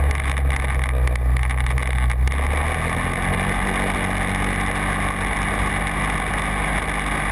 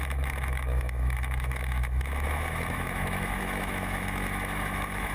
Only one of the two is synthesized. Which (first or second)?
second